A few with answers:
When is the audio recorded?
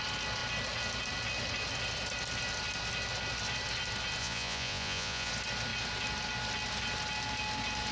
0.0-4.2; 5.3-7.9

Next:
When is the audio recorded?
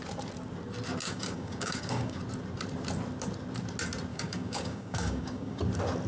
0.0-1.0; 2.2-4.1; 5.6-6.1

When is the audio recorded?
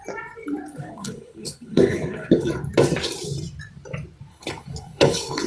0.0-0.7; 2.5-4.3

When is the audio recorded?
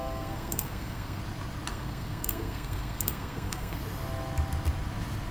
1.2-1.7; 3.8-5.3